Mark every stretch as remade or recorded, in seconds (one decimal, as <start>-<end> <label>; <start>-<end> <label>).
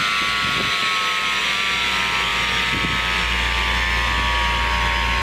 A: 0.0-5.2 recorded